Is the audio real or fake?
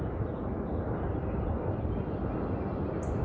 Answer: real